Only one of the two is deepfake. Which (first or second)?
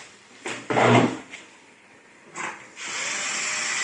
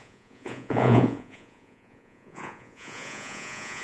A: second